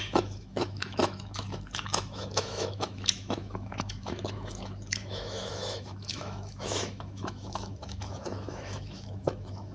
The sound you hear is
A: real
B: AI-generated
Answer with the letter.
B